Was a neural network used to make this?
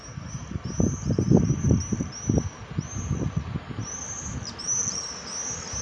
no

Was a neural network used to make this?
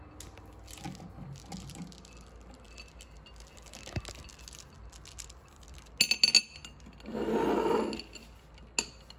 no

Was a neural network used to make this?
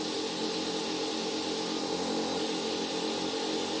no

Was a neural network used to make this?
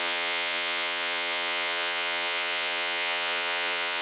yes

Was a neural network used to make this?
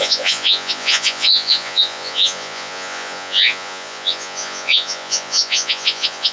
yes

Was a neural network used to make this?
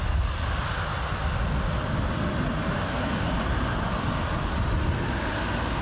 no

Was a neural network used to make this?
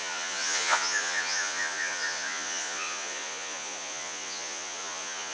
yes